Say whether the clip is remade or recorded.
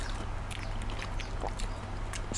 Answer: recorded